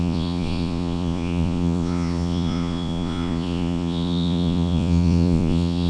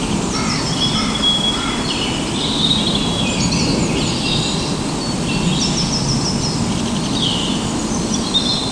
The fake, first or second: first